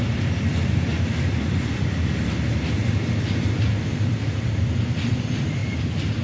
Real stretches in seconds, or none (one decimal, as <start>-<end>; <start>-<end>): 5.6-6.2